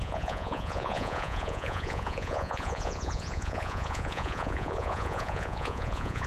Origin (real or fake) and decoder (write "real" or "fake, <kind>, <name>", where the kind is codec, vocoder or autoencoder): fake, vocoder, Vocos